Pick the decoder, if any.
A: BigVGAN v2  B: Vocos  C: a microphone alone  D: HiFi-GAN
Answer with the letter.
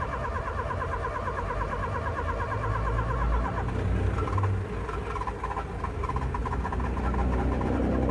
C